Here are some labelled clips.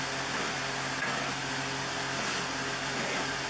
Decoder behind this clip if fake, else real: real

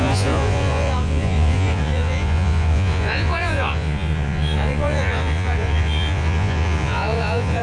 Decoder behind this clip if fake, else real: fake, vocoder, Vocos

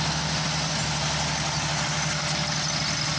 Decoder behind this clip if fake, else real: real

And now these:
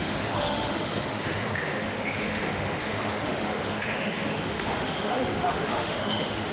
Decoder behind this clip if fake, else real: fake, autoencoder, DAC-VAE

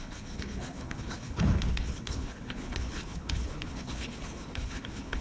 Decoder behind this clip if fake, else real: fake, codec, HILCodec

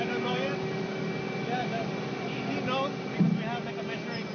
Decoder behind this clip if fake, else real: real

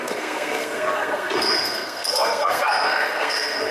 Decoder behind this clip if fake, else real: fake, codec, SNAC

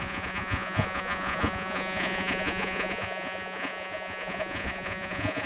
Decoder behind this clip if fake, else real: fake, vocoder, Vocos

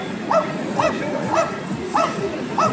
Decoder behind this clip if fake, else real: fake, vocoder, Vocos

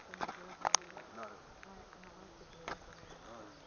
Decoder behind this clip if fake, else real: real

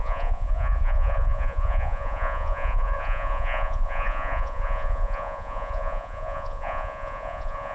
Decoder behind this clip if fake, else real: fake, vocoder, Vocos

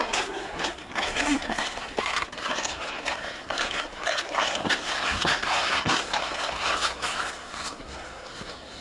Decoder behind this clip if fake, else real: fake, codec, SNAC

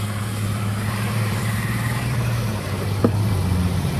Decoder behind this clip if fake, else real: fake, vocoder, BigVGAN v2